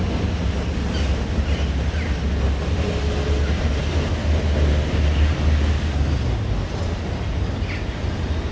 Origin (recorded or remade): recorded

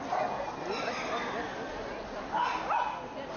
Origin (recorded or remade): recorded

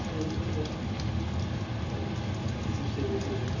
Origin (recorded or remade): recorded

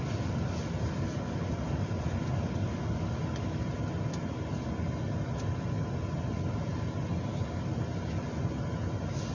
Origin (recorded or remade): recorded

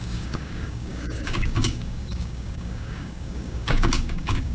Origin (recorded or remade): remade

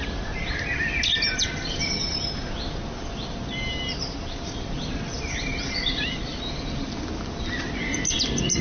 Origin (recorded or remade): recorded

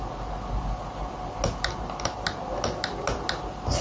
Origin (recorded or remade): recorded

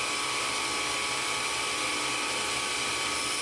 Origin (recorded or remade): recorded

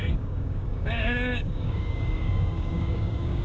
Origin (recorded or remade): remade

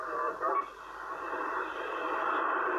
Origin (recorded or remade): recorded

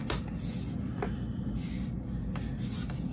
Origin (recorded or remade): recorded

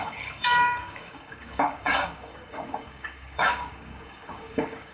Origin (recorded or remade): remade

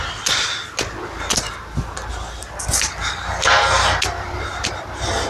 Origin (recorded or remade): recorded